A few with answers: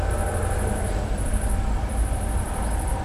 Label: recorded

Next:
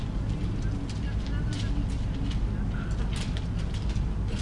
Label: recorded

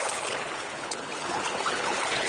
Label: remade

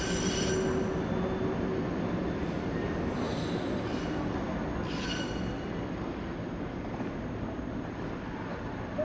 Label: recorded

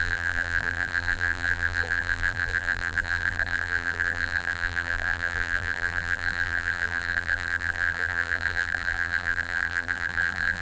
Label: remade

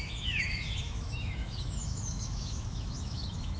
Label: remade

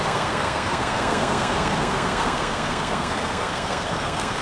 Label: remade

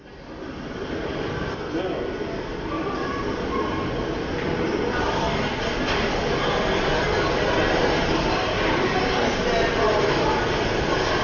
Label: recorded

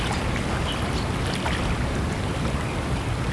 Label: recorded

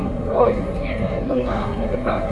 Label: remade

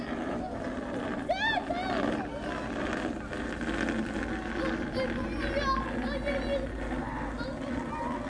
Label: recorded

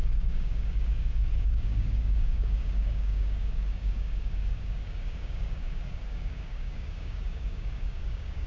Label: remade